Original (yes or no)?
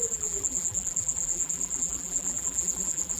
no